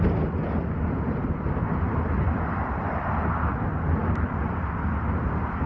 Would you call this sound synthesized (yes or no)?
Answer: no